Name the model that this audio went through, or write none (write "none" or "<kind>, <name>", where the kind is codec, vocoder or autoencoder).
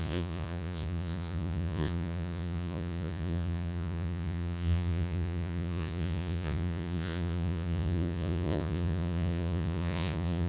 vocoder, Vocos